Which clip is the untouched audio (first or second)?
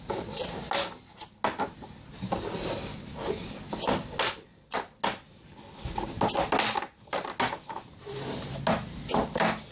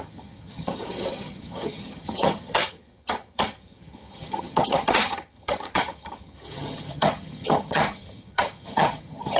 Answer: first